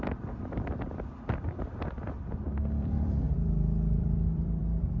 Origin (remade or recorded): remade